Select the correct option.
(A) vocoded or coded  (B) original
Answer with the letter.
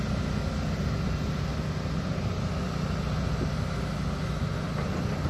B